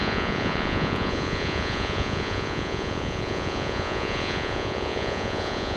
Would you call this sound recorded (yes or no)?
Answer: no